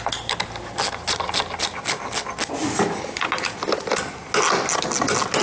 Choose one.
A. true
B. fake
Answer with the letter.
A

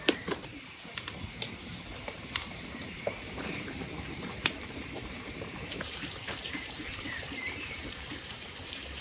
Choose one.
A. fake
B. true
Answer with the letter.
A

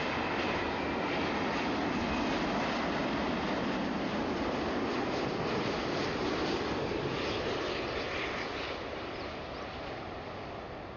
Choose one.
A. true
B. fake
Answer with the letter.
A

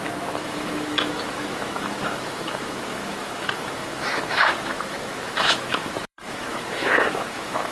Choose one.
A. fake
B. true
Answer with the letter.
A